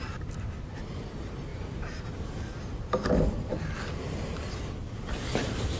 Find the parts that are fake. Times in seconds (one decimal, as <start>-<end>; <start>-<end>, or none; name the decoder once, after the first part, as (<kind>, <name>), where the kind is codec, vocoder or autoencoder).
1.5-2.0 (vocoder, BigVGAN v2)

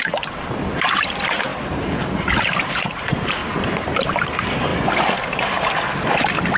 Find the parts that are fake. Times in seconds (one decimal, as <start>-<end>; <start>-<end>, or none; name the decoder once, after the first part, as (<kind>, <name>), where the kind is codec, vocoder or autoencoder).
0.0-1.5 (vocoder, BigVGAN v2); 2.4-4.7

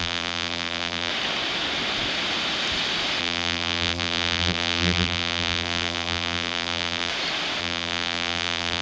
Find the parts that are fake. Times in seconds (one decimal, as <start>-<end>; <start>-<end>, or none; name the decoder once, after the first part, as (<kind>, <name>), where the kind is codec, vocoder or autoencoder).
0.0-1.1 (vocoder, BigVGAN v2); 3.2-7.1; 7.6-8.8

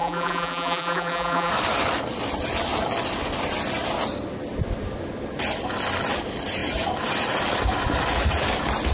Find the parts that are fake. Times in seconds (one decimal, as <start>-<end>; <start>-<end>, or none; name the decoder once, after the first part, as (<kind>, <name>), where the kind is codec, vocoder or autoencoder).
0.0-1.5 (vocoder, BigVGAN v2)

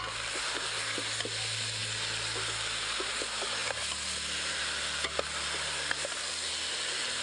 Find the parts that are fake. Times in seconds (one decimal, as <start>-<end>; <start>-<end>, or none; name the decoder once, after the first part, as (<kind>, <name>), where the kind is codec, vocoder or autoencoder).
none

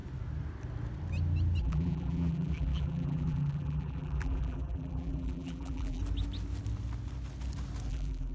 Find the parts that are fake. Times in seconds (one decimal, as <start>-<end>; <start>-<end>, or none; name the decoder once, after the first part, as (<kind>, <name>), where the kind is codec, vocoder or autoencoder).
1.6-6.0 (vocoder, BigVGAN v2); 7.9-8.3

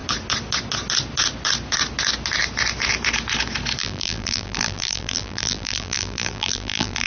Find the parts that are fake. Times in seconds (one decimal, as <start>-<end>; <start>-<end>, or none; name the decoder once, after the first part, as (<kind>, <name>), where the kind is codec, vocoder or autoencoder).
3.8-7.1 (vocoder, BigVGAN v2)

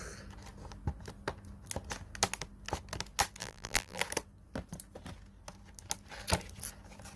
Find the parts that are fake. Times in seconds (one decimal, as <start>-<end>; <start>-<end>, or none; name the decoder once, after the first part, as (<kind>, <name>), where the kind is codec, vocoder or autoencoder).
3.4-4.0 (vocoder, BigVGAN v2)